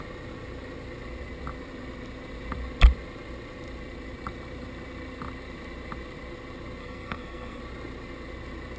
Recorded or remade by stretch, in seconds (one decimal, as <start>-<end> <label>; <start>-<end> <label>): 0.0-6.8 recorded; 6.8-7.6 remade; 7.6-8.8 recorded